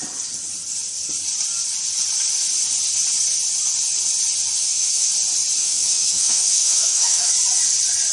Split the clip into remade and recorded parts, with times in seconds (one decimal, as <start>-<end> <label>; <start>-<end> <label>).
0.0-4.6 recorded; 4.6-5.1 remade; 5.1-5.6 recorded; 5.6-7.3 remade; 7.3-8.1 recorded